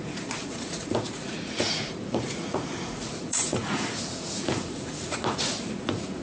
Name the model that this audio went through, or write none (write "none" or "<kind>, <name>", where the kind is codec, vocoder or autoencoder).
vocoder, Vocos